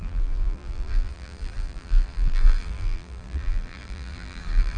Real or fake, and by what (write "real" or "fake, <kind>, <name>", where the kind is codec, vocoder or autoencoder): fake, vocoder, BigVGAN v2